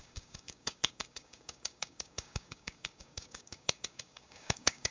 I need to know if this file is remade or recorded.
remade